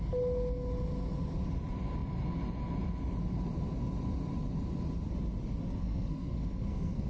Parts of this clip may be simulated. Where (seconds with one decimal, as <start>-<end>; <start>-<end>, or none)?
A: 5.8-7.1